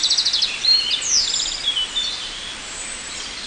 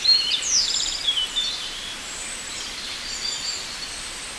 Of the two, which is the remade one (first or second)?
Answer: second